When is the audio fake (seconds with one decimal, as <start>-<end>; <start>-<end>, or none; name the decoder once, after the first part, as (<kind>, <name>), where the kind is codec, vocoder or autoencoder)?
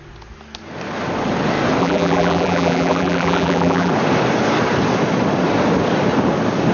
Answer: 1.8-3.9 (vocoder, BigVGAN v2)